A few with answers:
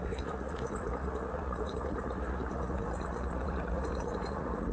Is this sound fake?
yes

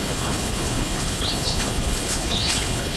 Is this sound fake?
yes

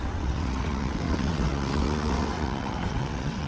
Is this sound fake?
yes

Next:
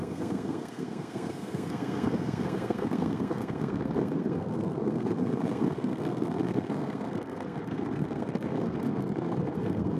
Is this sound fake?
yes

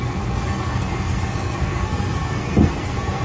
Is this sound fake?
yes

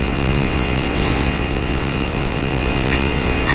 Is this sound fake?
yes